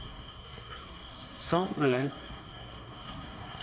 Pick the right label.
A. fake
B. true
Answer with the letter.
A